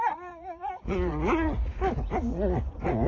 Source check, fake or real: fake